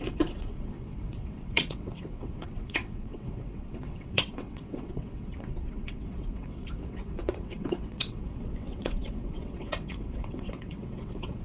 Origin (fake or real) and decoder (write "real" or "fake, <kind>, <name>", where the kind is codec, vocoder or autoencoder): fake, vocoder, WaveNeXt